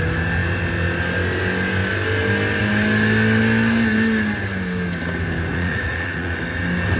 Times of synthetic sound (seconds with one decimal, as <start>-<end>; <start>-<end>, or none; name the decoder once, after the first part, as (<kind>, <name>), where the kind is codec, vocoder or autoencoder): 5.5-6.4 (vocoder, Vocos)